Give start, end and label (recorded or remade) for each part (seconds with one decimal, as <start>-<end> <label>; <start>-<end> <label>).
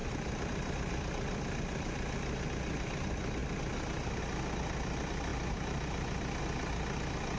0.0-7.4 recorded